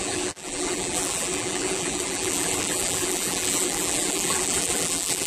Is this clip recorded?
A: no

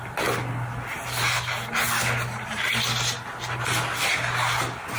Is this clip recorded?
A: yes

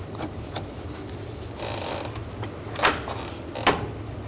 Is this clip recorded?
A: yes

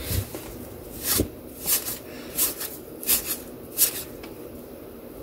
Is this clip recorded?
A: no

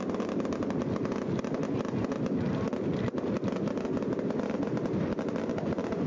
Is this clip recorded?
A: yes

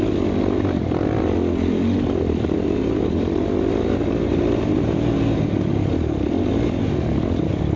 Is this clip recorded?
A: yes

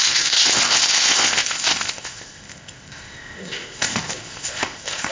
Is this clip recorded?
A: no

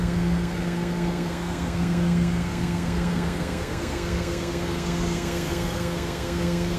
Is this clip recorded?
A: no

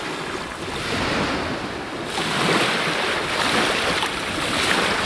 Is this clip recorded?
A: yes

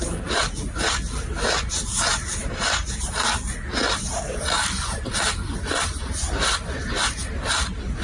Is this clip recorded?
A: no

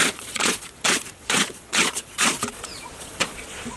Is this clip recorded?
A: no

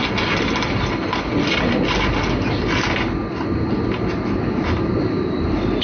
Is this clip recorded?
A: yes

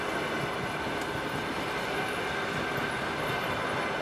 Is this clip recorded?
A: yes